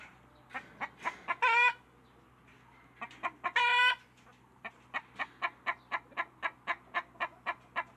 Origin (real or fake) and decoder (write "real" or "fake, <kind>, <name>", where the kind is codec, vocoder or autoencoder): real